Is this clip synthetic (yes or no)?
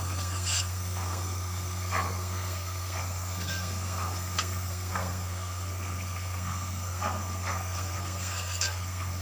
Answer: yes